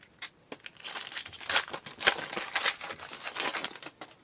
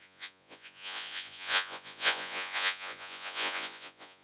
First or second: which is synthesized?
second